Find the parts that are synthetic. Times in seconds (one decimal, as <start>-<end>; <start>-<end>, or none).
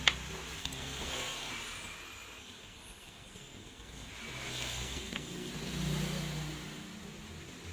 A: 0.6-1.5; 2.4-4.1; 4.5-5.5